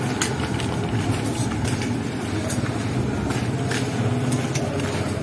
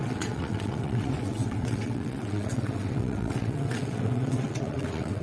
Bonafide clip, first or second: first